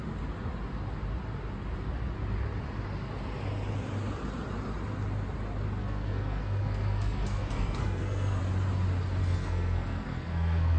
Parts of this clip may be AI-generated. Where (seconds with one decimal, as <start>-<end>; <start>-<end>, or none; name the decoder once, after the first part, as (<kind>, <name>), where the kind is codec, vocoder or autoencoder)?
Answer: 5.8-8.4 (codec, SNAC); 9.2-10.8